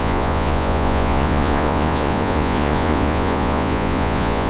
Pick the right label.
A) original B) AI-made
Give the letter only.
B